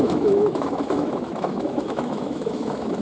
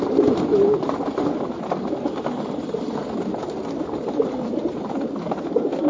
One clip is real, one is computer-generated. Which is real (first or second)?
second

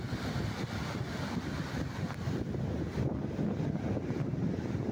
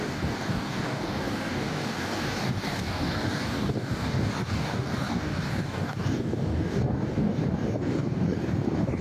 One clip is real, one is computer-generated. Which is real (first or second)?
first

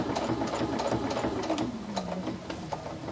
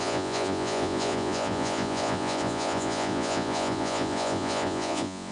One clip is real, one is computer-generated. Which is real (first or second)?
first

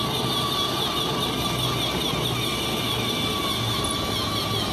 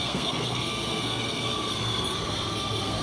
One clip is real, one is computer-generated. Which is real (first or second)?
first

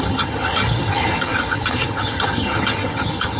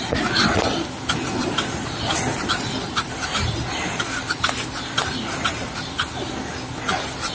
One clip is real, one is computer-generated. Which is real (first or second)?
second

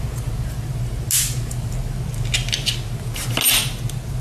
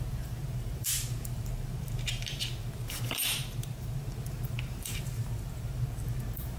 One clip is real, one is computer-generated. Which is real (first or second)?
first